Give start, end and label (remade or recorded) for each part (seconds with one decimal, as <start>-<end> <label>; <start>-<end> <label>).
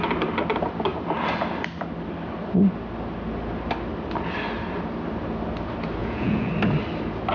0.0-6.0 recorded; 6.0-6.5 remade; 6.5-7.3 recorded